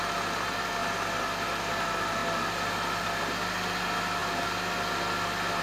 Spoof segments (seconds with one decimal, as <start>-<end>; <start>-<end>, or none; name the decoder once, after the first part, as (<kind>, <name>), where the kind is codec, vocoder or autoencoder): none